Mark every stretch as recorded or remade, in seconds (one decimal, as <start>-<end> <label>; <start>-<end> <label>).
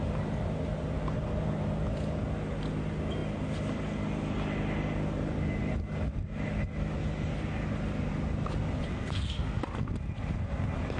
0.0-8.9 recorded; 8.9-9.6 remade; 9.6-11.0 recorded